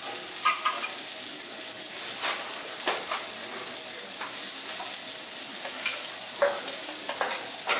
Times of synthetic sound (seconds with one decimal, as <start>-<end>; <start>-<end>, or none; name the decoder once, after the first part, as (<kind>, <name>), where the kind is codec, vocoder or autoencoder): 5.5-6.1 (codec, DAC)